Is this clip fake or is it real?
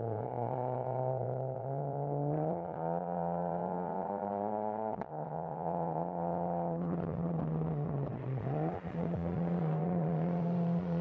fake